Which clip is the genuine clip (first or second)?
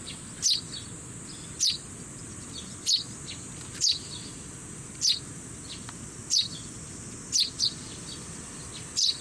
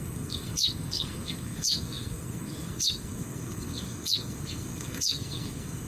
first